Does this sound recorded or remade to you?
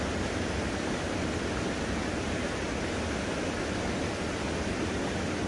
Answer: recorded